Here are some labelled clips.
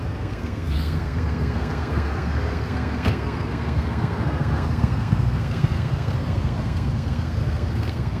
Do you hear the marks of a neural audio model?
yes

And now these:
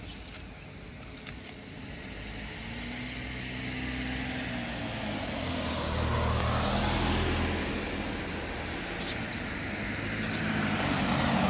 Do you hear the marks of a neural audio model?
no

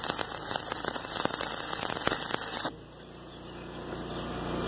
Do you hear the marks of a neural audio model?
no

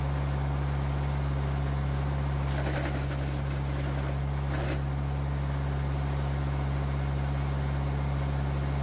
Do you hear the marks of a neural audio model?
no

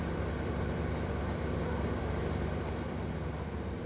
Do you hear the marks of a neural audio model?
no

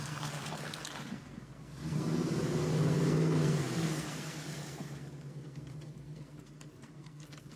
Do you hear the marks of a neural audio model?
yes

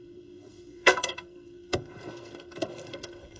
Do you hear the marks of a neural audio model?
yes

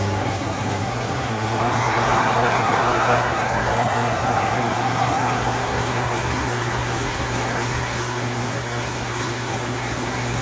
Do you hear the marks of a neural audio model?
yes